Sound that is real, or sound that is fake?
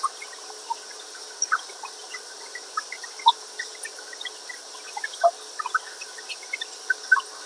real